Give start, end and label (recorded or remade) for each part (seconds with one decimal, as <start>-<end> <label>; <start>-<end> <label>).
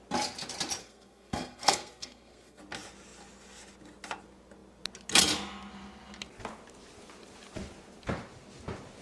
0.0-0.8 recorded; 0.8-2.6 remade; 2.6-9.0 recorded